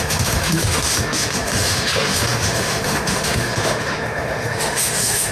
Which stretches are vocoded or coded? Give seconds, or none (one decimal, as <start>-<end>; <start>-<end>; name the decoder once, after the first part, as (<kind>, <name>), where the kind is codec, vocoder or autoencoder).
0.0-5.3 (autoencoder, DAC-VAE)